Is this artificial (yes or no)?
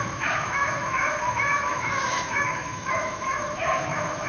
yes